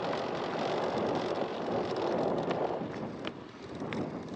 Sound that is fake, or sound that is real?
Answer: real